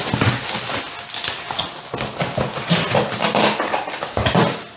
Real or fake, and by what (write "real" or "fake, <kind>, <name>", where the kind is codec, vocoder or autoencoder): real